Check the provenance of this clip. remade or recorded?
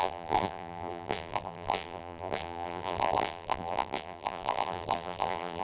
remade